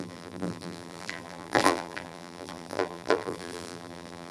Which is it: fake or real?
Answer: fake